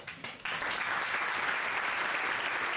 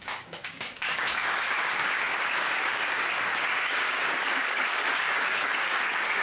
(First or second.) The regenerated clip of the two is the second